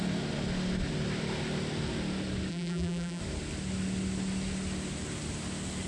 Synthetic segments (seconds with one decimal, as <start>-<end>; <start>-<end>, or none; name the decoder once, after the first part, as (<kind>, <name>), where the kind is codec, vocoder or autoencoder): 2.5-3.2 (vocoder, BigVGAN v2)